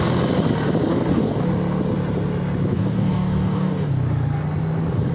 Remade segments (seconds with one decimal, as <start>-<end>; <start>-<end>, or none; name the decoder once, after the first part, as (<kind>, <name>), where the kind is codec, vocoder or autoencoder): 0.9-1.5 (codec, DAC); 2.7-3.9